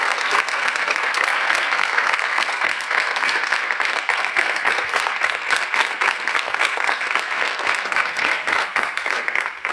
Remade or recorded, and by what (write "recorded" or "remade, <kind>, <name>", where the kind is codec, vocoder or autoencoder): remade, codec, SNAC